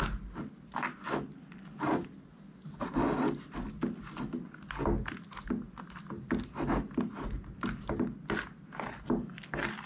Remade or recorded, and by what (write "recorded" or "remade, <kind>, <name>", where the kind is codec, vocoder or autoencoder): recorded